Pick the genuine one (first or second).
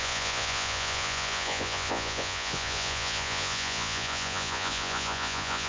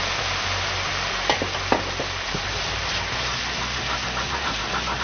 second